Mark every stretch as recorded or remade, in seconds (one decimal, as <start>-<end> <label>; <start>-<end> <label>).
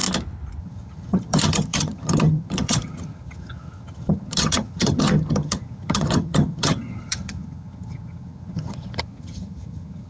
0.0-0.6 recorded; 0.6-10.1 remade